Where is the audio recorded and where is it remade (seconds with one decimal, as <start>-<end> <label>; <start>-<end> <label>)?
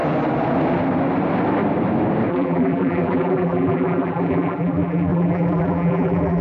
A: 0.0-2.3 recorded; 2.3-6.4 remade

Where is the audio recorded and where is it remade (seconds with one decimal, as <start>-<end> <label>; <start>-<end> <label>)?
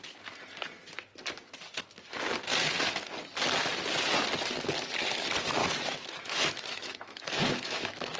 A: 0.0-5.6 recorded; 5.6-8.2 remade